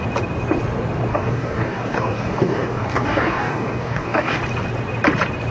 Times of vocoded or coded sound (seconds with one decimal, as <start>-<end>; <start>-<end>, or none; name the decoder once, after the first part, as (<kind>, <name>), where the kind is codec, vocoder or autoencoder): 1.1-4.4 (codec, DAC)